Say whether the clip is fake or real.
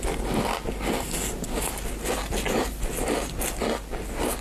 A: real